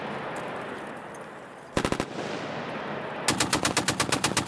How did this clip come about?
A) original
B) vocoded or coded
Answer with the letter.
A